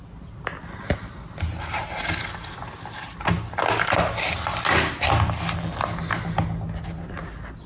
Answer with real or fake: real